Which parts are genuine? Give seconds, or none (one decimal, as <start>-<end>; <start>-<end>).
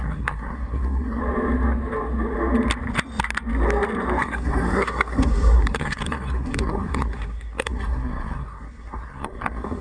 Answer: 1.2-4.2